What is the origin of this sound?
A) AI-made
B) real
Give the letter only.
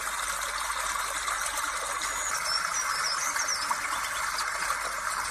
B